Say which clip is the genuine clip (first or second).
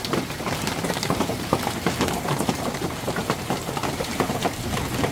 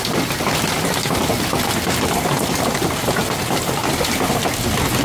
second